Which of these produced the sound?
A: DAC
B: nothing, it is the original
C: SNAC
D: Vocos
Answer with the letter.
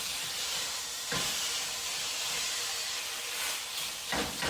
B